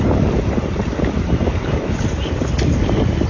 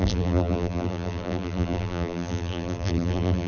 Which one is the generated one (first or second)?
second